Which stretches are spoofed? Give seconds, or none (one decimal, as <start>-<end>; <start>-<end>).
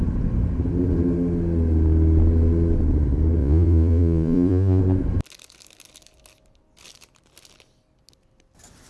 3.4-4.8